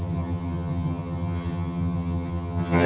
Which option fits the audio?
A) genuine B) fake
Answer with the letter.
B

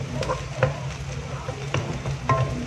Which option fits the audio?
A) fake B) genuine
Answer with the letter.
B